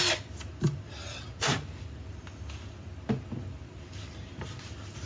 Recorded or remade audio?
recorded